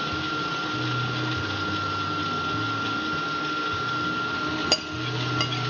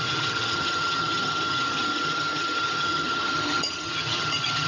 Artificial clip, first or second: second